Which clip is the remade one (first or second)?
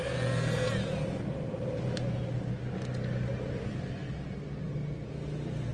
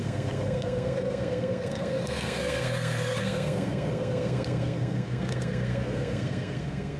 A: second